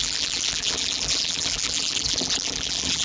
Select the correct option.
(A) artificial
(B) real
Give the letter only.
A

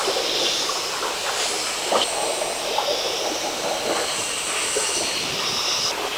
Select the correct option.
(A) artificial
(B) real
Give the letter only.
B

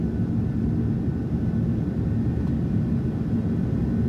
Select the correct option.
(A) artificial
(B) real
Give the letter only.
B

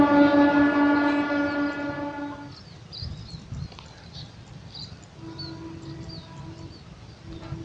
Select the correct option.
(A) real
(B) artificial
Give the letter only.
A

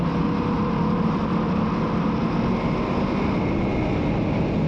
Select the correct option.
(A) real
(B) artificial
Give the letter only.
A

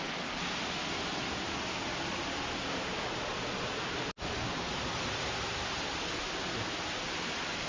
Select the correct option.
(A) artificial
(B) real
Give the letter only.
B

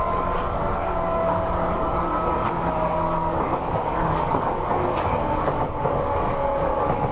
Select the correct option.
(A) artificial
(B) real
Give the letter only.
A